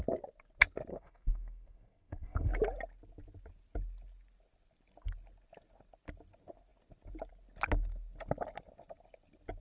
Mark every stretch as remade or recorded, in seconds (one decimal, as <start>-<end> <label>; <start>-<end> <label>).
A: 0.0-0.9 recorded; 0.9-2.5 remade; 2.5-9.6 recorded